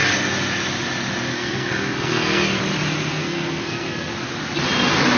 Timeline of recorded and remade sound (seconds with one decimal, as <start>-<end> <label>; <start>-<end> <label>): 0.0-1.3 recorded; 1.3-2.6 remade; 2.6-3.2 recorded; 3.2-4.1 remade; 4.1-5.2 recorded